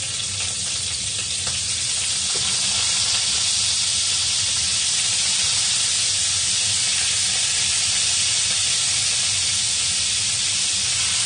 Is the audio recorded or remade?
recorded